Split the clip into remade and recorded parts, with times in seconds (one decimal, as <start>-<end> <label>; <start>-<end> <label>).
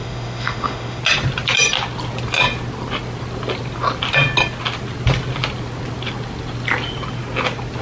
0.0-1.0 remade; 1.0-7.8 recorded